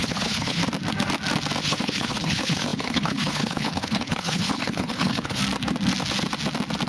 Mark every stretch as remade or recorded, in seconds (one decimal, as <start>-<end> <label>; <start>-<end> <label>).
0.0-0.6 remade; 0.6-1.6 recorded; 1.6-5.4 remade; 5.4-6.9 recorded